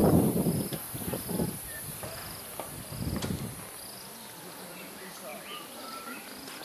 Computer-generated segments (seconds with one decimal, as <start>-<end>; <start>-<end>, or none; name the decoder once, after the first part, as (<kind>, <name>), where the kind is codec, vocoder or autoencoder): none

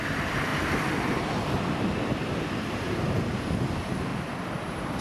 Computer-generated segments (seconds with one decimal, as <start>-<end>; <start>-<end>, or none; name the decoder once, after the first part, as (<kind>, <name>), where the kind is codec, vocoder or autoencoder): 4.1-5.0 (vocoder, BigVGAN v2)